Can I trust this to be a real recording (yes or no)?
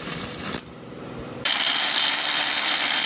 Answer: no